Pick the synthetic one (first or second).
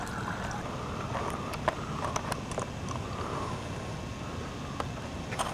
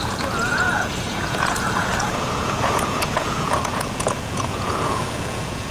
second